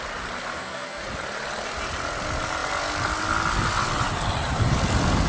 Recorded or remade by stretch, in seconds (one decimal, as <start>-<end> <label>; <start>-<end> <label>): 0.0-0.5 recorded; 0.5-1.0 remade; 1.0-5.3 recorded